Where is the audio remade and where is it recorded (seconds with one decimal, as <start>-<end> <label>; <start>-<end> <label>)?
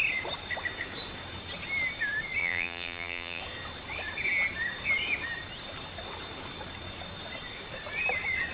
0.0-2.4 recorded; 2.4-3.4 remade; 3.4-8.5 recorded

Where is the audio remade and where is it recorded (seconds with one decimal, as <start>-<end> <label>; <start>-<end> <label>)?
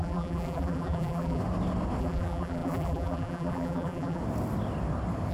0.0-1.4 remade; 1.4-2.0 recorded; 2.0-4.2 remade; 4.2-5.3 recorded